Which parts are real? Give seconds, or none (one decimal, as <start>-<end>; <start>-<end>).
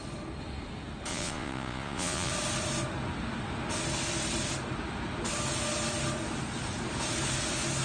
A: 0.0-1.1; 2.3-7.8